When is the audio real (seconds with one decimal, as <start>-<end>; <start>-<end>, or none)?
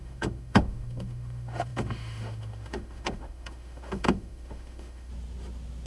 5.1-5.9